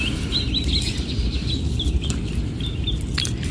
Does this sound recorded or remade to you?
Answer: recorded